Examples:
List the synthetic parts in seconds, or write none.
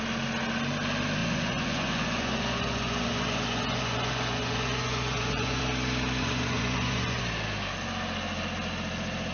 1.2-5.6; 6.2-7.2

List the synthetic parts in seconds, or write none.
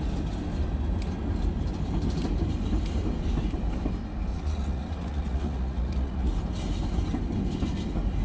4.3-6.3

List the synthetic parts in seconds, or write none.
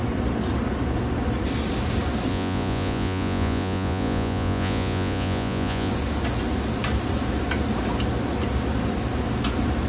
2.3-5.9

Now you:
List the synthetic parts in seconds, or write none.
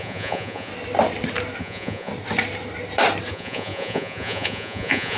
0.0-0.7; 1.6-2.1; 3.3-5.2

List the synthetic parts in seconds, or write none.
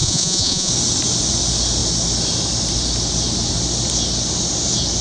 0.0-0.7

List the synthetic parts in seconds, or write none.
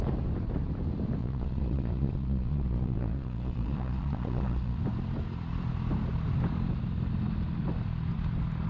1.2-4.8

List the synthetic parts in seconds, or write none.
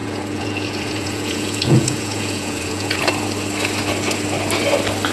0.0-3.1